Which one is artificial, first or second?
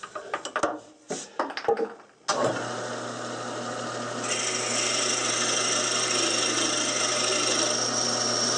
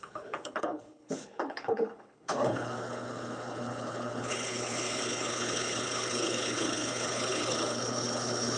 second